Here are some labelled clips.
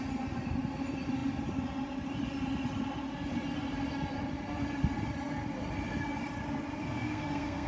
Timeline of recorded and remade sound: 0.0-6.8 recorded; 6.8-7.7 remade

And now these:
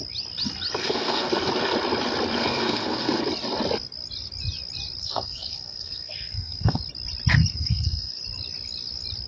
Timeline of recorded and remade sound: 0.0-0.8 recorded; 0.8-1.3 remade; 1.3-2.4 recorded; 2.4-3.2 remade; 3.2-5.0 recorded; 5.0-6.8 remade; 6.8-7.5 recorded; 7.5-8.2 remade; 8.2-9.3 recorded